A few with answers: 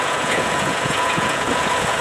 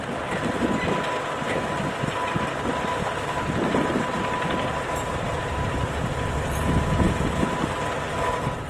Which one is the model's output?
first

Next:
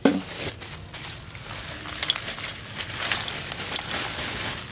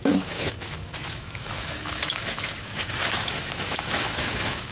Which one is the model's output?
second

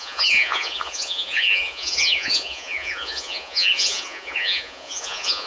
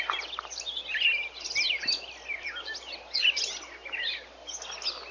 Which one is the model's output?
first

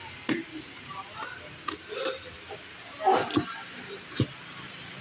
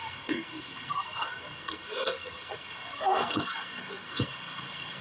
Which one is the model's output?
second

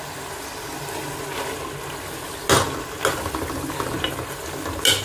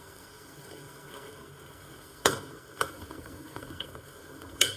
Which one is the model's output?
second